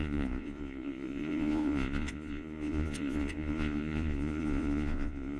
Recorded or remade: remade